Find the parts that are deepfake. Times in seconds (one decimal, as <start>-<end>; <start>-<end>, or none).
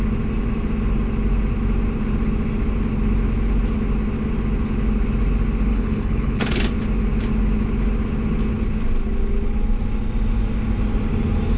5.7-6.6